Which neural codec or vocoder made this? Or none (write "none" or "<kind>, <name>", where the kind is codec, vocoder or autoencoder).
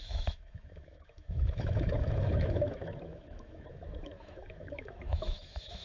autoencoder, DAC-VAE